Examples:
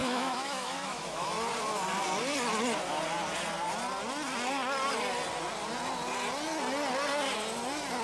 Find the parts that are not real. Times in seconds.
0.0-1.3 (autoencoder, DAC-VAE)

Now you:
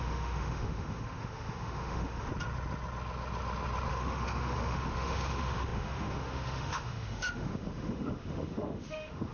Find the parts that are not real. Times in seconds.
0.0-2.3 (autoencoder, DAC-VAE); 3.9-9.3

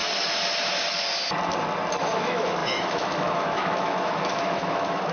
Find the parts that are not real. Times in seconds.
2.0-5.1 (autoencoder, DAC-VAE)